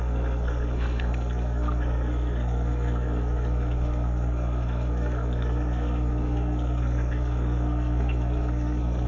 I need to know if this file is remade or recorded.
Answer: remade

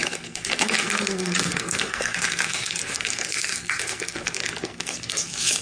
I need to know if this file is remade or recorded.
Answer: remade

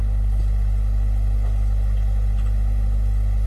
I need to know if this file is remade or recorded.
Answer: recorded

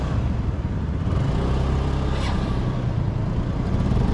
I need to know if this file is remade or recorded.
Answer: recorded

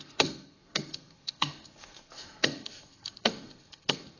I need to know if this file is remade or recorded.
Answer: remade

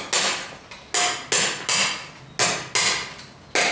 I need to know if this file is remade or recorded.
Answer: recorded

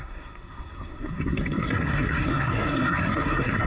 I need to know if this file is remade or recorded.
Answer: remade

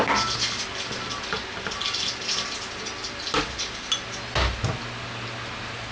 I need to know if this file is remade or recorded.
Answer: recorded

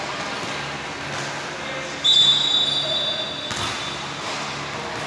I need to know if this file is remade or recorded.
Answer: recorded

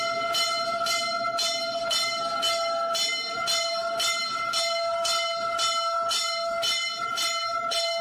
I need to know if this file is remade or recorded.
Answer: recorded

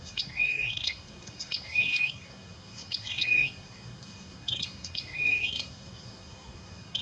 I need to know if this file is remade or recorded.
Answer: remade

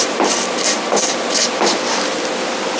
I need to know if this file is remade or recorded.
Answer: recorded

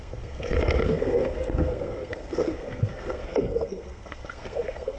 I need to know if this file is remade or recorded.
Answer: remade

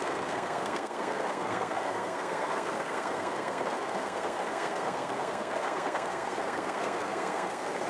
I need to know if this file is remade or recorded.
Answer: remade